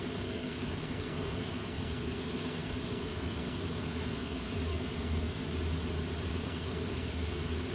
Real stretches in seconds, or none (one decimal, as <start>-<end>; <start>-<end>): 5.4-6.3